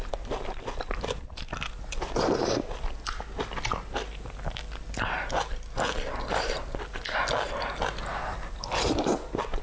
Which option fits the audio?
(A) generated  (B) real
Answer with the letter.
B